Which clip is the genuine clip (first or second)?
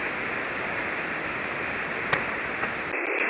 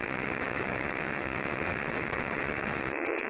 first